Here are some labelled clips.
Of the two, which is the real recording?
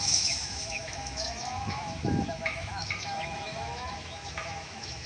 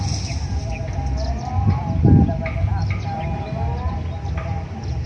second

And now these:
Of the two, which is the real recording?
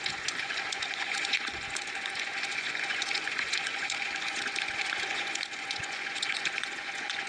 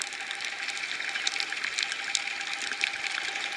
second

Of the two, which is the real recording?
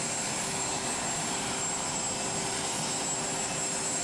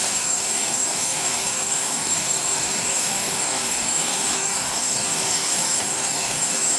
first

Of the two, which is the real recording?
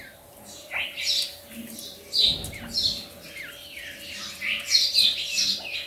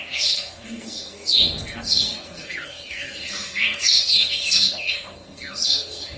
first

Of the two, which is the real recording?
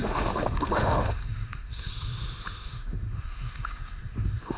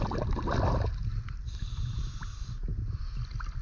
second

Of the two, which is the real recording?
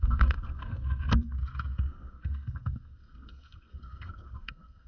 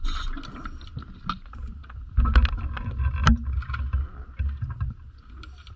second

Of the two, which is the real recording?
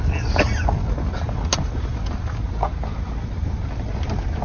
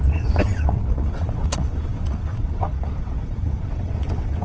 first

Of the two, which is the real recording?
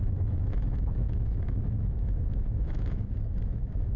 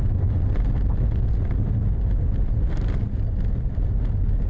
second